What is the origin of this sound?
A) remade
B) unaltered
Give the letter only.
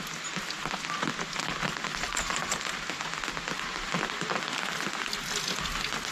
B